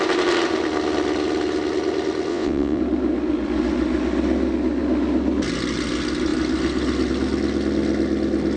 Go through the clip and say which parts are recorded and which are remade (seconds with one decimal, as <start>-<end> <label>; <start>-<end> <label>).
0.0-2.3 recorded; 2.3-2.8 remade; 2.8-8.6 recorded